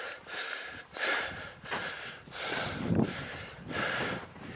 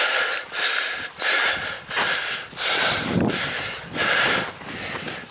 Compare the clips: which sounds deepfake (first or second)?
first